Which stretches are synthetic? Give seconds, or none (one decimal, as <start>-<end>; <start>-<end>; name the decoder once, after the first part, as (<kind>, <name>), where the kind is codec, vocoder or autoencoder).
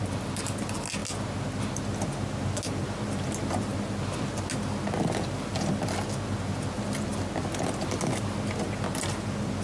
none